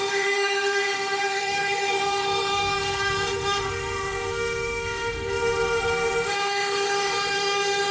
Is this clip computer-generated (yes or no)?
yes